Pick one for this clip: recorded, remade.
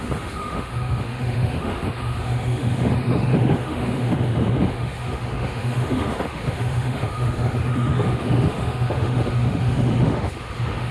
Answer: remade